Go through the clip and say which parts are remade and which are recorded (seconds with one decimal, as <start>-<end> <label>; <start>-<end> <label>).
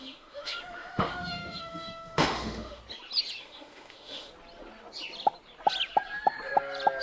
0.0-2.8 remade; 2.8-3.4 recorded; 3.4-4.3 remade; 4.3-7.0 recorded